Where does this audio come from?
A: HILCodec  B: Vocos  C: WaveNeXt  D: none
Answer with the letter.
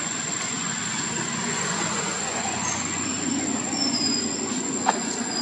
B